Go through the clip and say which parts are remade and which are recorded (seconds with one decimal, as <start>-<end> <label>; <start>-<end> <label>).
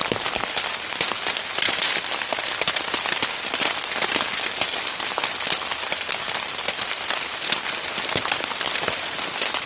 0.0-9.7 recorded